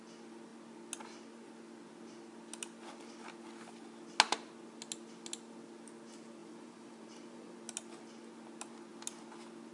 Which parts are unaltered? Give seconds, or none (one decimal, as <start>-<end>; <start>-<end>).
0.0-6.4; 7.6-9.7